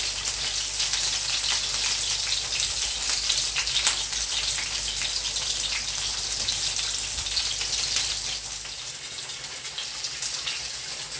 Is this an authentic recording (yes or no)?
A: yes